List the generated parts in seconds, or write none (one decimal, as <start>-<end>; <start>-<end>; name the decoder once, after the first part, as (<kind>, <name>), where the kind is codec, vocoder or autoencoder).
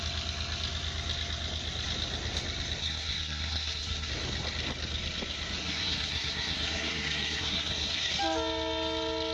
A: 2.8-4.1 (codec, SNAC); 5.6-8.1